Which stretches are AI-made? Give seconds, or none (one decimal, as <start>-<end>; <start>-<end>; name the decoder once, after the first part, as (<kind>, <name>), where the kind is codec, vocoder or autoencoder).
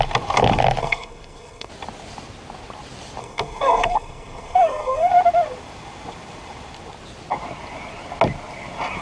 0.8-1.7 (codec, SNAC); 3.2-5.1